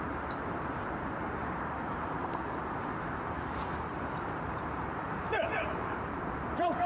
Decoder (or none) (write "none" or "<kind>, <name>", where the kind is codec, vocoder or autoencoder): vocoder, BigVGAN v2